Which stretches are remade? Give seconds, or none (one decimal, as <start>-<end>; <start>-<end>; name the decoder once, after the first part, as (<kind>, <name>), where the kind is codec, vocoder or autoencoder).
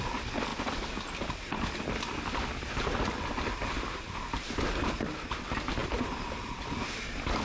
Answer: none